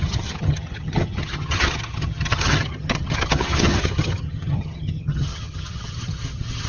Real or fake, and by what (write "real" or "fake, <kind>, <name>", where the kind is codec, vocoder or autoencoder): fake, vocoder, HiFi-GAN